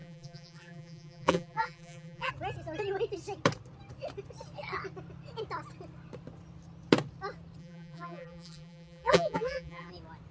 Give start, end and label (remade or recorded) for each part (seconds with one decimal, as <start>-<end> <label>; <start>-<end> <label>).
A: 0.0-2.3 remade; 2.3-7.6 recorded; 7.6-9.9 remade; 9.9-10.3 recorded